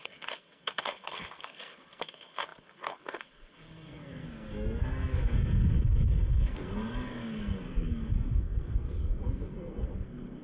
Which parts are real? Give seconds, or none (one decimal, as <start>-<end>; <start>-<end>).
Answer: none